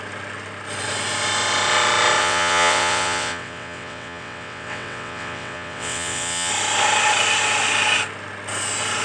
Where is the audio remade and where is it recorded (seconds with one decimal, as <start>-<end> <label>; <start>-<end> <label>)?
0.0-2.2 recorded; 2.2-6.5 remade; 6.5-9.0 recorded